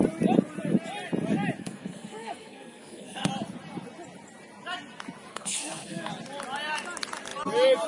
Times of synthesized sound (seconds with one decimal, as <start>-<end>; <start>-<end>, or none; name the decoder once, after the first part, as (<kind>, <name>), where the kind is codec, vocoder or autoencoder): 1.6-3.3 (codec, SNAC); 5.3-6.1